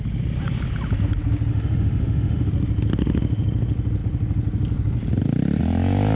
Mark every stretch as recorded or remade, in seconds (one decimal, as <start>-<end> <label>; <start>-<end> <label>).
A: 0.0-1.5 recorded; 1.5-2.5 remade; 2.5-6.2 recorded